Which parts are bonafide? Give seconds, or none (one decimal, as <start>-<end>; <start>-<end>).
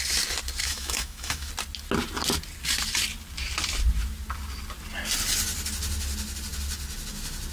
0.0-0.6; 1.5-7.5